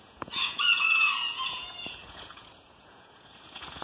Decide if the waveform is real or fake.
fake